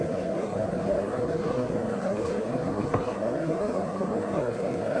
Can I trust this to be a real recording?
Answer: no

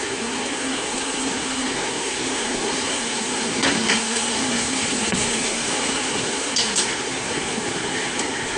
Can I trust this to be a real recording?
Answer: no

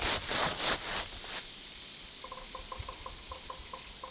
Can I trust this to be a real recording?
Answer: yes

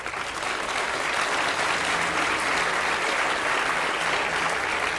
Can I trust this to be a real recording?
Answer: yes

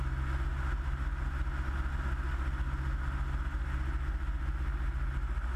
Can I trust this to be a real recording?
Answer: yes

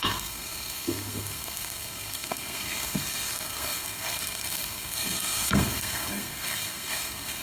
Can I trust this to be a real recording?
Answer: no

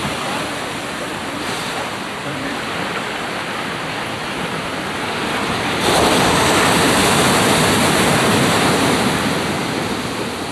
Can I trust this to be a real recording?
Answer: yes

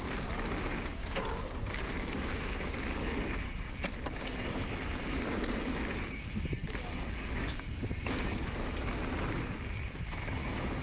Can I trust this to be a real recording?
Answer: yes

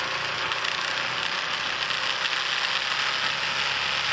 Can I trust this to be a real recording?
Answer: yes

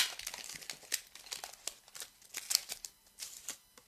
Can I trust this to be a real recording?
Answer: yes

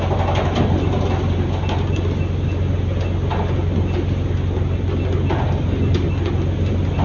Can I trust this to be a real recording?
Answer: yes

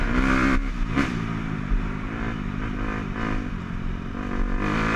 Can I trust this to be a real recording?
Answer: yes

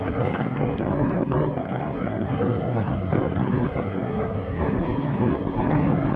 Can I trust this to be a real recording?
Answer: no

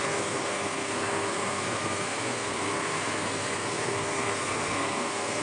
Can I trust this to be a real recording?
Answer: no